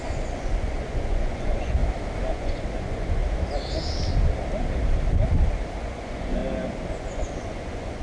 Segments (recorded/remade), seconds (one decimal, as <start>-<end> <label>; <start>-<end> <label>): 0.0-1.8 remade; 1.8-2.3 recorded; 2.3-3.2 remade; 3.2-5.8 recorded; 5.8-6.4 remade; 6.4-6.9 recorded; 6.9-8.0 remade

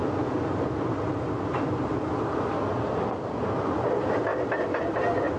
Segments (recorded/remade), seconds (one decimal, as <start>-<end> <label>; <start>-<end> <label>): 0.0-5.4 recorded

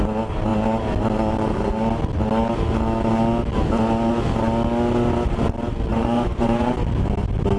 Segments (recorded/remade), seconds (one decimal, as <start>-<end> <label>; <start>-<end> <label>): 0.0-5.9 recorded; 5.9-6.7 remade; 6.7-7.6 recorded

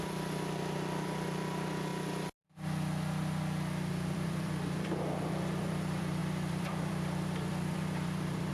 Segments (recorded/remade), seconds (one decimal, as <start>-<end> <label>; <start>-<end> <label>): 0.0-1.9 remade; 1.9-3.9 recorded; 3.9-8.5 remade

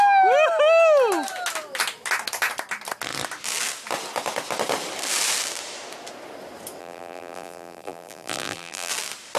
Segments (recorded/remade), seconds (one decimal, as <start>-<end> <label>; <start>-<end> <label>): 0.0-6.8 recorded; 6.8-8.9 remade; 8.9-9.4 recorded

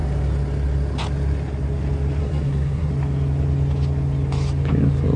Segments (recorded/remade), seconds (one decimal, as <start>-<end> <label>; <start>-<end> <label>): 0.0-2.2 recorded; 2.2-2.9 remade; 2.9-5.2 recorded

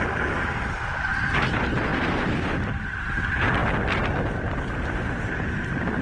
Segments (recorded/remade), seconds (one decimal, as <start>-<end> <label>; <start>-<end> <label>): 0.0-6.0 recorded

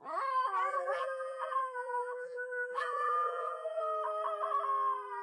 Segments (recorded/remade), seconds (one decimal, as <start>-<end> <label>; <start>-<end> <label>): 0.0-0.7 recorded; 0.7-3.8 remade; 3.8-5.2 recorded